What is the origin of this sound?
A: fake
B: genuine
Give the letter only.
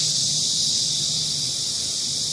B